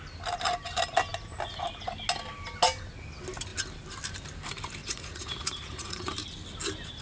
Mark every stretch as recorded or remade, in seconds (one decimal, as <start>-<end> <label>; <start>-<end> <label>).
0.0-4.8 recorded; 4.8-6.1 remade; 6.1-7.0 recorded

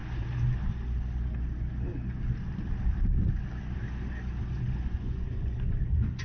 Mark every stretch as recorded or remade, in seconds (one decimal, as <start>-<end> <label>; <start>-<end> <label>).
0.0-4.4 recorded; 4.4-5.8 remade; 5.8-6.2 recorded

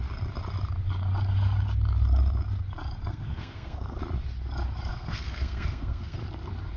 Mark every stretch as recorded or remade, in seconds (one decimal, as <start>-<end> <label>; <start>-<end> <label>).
0.0-3.1 recorded; 3.1-4.0 remade; 4.0-4.9 recorded; 4.9-6.2 remade; 6.2-6.8 recorded

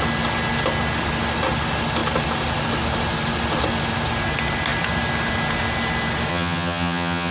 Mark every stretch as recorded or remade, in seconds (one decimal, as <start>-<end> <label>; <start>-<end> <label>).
0.0-6.3 recorded; 6.3-7.3 remade

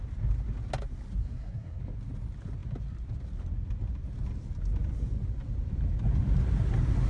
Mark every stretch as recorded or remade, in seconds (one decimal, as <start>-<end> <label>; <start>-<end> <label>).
0.0-1.2 recorded; 1.2-1.8 remade; 1.8-7.1 recorded